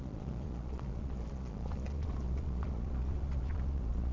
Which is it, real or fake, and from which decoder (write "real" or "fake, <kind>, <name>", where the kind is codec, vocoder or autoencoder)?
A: fake, vocoder, Vocos